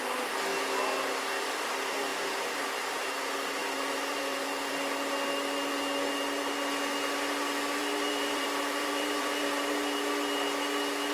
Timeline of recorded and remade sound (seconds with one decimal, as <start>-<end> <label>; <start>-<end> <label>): 0.0-2.1 recorded; 2.1-4.7 remade; 4.7-7.8 recorded; 7.8-9.4 remade; 9.4-11.1 recorded